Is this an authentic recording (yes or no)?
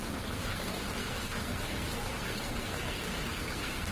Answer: no